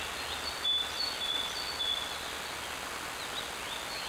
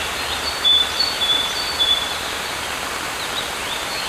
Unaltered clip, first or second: first